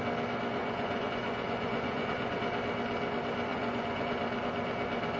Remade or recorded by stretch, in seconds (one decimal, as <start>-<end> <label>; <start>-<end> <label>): 0.0-0.6 recorded; 0.6-2.4 remade; 2.4-3.5 recorded; 3.5-4.2 remade; 4.2-5.2 recorded